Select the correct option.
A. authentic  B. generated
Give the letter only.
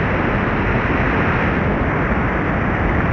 A